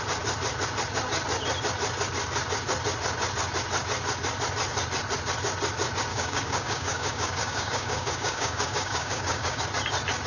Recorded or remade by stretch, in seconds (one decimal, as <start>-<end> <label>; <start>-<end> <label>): 0.0-6.1 recorded; 6.1-9.6 remade; 9.6-10.3 recorded